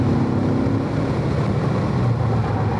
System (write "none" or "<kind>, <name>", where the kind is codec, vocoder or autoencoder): none